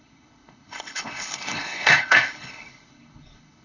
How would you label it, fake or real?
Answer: fake